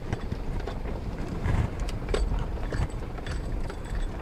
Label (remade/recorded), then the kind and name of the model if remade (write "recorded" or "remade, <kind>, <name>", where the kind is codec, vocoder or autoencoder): remade, vocoder, BigVGAN v2